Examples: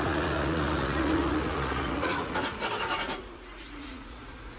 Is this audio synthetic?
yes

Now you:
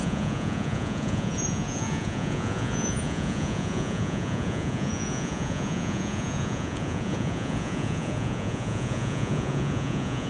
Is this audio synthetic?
yes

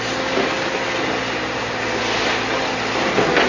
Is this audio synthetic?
no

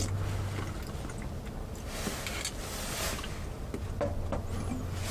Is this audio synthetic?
no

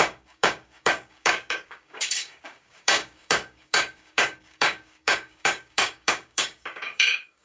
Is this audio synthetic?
yes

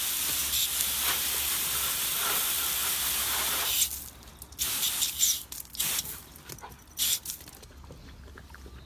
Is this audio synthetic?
no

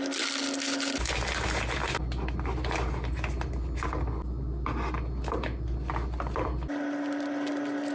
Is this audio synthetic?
no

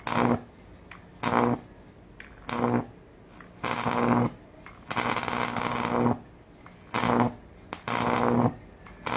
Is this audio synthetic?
no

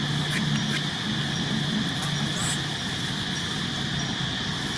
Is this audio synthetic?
no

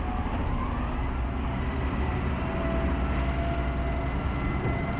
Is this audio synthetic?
no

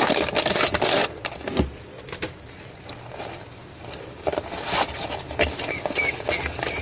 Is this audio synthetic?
no